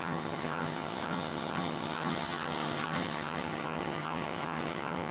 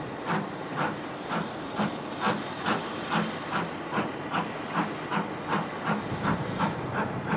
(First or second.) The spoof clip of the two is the first